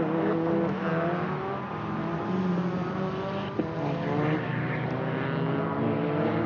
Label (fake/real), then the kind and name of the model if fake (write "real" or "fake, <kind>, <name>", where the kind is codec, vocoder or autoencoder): real